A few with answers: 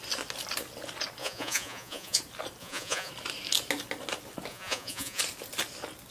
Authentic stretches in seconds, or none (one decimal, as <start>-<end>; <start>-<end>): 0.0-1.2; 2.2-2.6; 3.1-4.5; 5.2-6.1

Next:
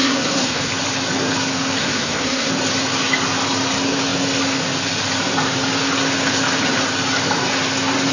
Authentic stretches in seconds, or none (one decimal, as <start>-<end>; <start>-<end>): 0.7-1.8; 2.5-8.1

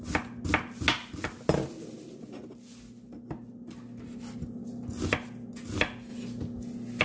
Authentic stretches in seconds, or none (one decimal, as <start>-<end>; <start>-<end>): 0.0-7.0

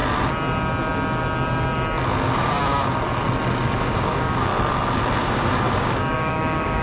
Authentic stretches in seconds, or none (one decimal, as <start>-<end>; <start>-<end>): 0.0-3.7; 4.5-5.2

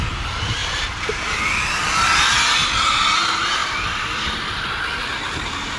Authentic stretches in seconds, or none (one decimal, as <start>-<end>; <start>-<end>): 0.0-0.6; 1.4-3.6; 4.6-5.8

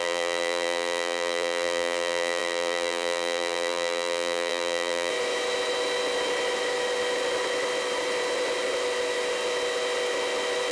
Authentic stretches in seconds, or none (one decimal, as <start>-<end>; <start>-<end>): 5.1-10.7